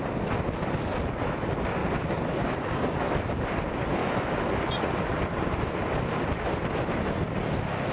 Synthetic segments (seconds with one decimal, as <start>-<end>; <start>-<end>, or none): 4.0-4.6